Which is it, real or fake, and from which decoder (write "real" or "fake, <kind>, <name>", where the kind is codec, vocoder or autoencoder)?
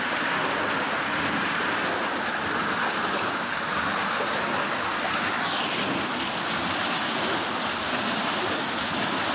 real